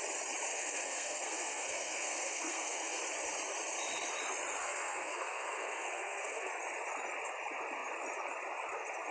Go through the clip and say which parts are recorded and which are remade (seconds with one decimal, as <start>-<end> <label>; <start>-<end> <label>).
0.0-0.5 recorded; 0.5-3.0 remade; 3.0-4.6 recorded; 4.6-6.5 remade; 6.5-9.1 recorded

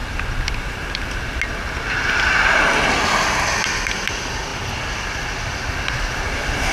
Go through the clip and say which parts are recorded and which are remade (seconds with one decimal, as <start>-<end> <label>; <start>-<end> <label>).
0.0-6.7 recorded

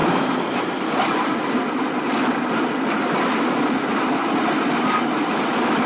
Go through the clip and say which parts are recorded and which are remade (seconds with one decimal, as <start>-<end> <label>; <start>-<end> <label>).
0.0-5.9 recorded

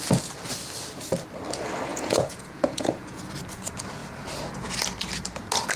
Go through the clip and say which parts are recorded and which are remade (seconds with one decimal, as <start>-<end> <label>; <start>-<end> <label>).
0.0-1.9 recorded; 1.9-3.2 remade; 3.2-5.8 recorded

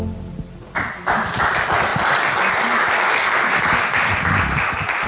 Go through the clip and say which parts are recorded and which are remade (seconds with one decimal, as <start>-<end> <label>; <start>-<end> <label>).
0.0-5.1 recorded

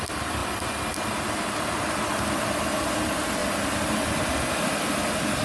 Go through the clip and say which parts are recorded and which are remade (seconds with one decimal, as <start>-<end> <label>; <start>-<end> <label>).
0.0-5.4 recorded